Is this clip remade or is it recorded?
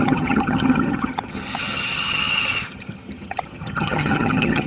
remade